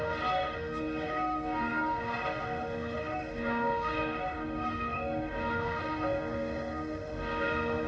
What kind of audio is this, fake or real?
fake